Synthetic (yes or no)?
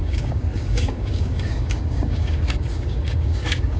yes